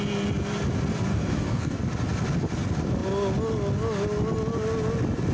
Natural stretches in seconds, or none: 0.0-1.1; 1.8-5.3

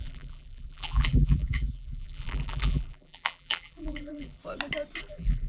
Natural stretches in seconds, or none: 4.4-5.0

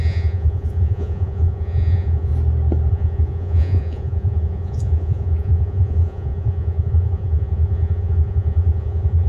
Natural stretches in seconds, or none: 2.3-2.9

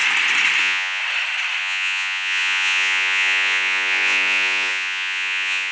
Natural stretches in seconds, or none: 0.0-0.6; 1.0-1.6

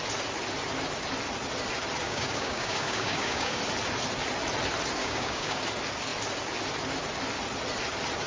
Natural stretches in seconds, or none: 0.0-2.0; 3.6-5.0; 5.6-8.3

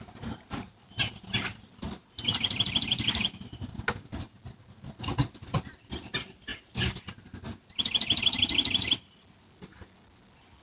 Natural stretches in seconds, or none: 0.0-10.6

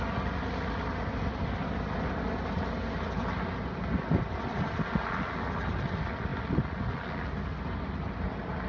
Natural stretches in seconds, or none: 0.0-8.7